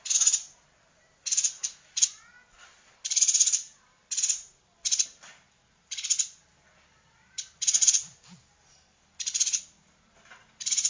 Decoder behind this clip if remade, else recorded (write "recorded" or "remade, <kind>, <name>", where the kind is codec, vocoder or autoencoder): recorded